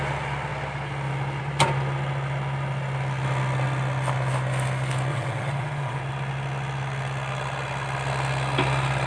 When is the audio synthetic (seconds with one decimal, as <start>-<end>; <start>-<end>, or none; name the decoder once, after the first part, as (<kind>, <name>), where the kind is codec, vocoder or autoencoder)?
5.1-6.0 (vocoder, WaveNeXt)